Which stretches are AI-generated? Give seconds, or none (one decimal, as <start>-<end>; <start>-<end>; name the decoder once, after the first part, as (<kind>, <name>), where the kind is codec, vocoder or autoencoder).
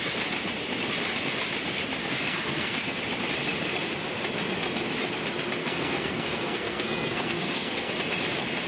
2.0-3.0 (codec, SNAC); 5.6-7.9